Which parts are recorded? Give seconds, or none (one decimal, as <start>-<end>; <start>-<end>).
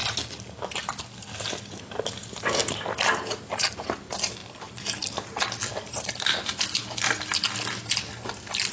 0.0-8.7